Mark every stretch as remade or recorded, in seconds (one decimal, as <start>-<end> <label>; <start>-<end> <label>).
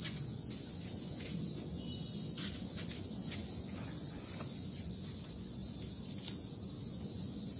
0.0-5.6 remade; 5.6-6.8 recorded; 6.8-7.6 remade